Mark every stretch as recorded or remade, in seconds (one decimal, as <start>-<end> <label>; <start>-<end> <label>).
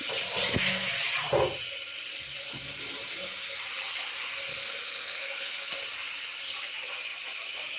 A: 0.0-4.5 recorded; 4.5-5.7 remade; 5.7-7.8 recorded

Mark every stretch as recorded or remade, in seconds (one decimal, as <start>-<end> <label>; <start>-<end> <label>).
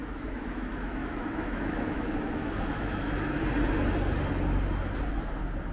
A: 0.0-3.4 remade; 3.4-5.7 recorded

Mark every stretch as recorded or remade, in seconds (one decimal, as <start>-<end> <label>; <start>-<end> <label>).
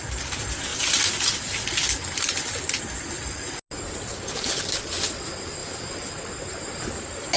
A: 0.0-7.4 recorded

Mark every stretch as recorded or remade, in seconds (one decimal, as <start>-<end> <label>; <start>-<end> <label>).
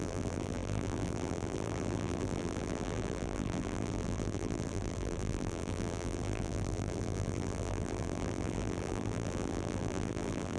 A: 0.0-10.6 remade